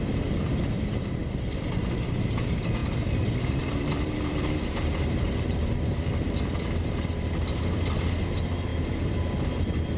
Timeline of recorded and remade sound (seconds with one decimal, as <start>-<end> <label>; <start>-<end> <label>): 0.0-2.8 recorded; 2.8-5.7 remade; 5.7-8.7 recorded; 8.7-9.5 remade; 9.5-10.0 recorded